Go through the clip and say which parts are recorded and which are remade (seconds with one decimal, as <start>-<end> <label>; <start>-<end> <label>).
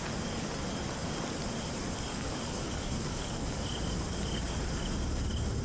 0.0-2.1 recorded; 2.1-3.6 remade; 3.6-5.6 recorded